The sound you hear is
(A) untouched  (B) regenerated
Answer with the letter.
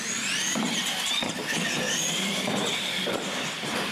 A